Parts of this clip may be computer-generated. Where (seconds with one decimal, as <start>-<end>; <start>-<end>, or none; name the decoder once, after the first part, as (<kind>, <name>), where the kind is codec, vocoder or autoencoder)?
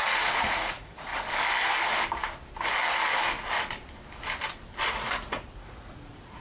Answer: 0.0-1.1 (vocoder, Vocos); 4.9-6.4